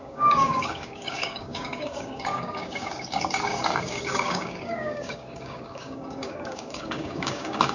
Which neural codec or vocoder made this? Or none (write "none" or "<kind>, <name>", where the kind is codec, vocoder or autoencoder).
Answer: codec, DAC